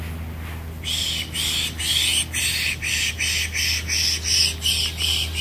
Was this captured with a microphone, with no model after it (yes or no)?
yes